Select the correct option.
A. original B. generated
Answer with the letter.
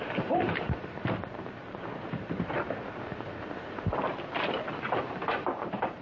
B